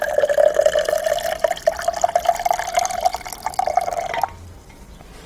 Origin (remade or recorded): recorded